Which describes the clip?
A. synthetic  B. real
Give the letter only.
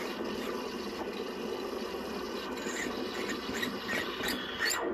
B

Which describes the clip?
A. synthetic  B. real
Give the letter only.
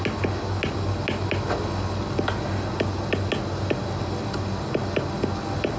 B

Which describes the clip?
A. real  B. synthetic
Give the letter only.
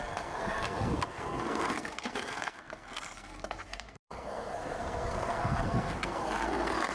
B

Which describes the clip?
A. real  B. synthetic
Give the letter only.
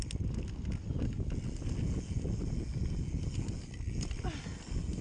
A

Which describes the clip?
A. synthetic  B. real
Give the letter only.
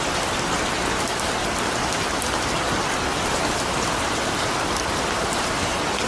B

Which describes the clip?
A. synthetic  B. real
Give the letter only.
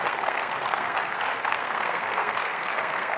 A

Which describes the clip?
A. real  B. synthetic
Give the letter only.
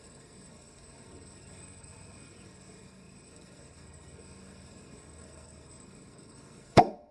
B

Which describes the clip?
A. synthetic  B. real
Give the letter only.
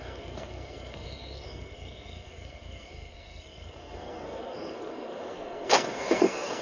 A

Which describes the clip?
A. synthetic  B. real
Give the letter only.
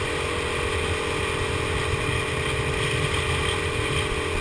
B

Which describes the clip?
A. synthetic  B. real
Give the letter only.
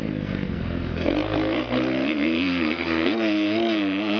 A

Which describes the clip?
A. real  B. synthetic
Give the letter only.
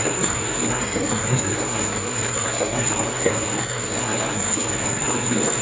B